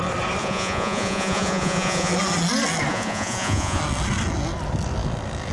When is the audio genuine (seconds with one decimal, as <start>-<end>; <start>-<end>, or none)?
0.0-0.4; 2.1-2.9; 3.8-5.5